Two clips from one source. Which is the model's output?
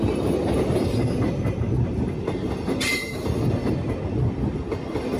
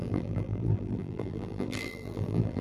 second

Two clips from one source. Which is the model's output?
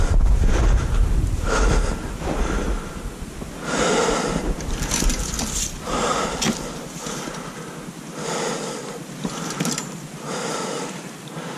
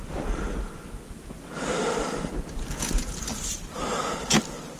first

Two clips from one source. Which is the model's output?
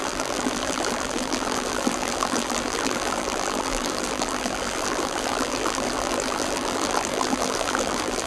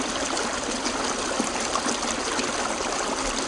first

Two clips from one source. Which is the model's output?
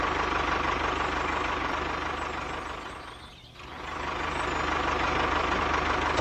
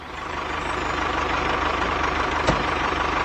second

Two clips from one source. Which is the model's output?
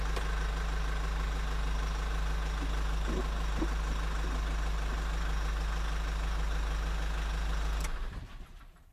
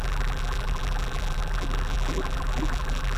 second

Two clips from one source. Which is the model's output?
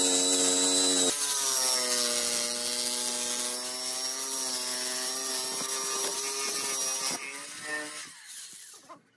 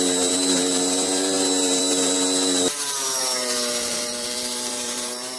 second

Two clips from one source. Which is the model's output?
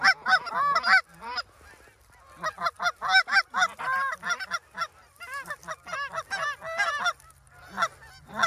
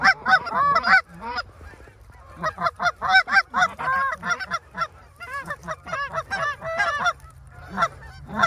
second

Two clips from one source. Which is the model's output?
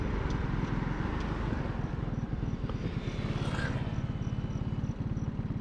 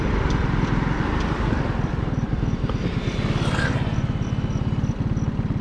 second